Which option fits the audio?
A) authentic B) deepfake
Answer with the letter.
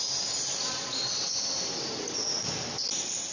A